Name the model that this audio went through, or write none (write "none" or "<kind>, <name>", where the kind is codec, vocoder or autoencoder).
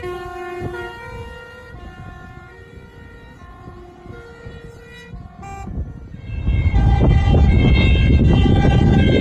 none